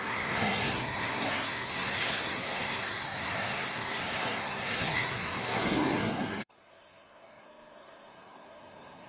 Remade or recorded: remade